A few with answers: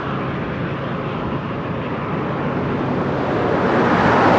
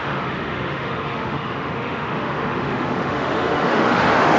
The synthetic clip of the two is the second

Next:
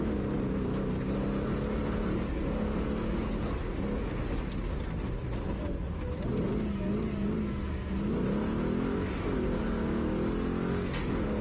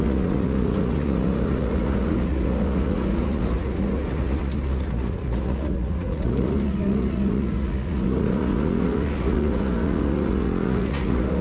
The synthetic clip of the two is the second